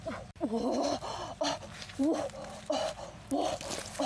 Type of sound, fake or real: real